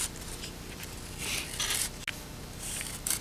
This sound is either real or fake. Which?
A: real